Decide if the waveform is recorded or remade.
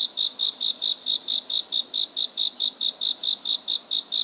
recorded